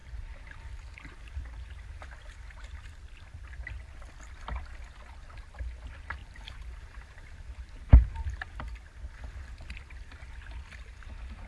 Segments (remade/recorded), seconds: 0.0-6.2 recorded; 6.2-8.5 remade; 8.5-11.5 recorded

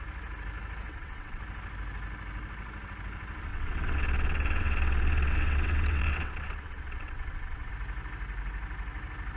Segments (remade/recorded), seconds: 0.0-0.9 recorded; 0.9-1.4 remade; 1.4-3.5 recorded; 3.5-7.7 remade; 7.7-9.4 recorded

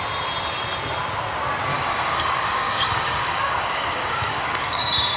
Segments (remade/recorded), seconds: 0.0-1.7 recorded; 1.7-4.8 remade; 4.8-5.2 recorded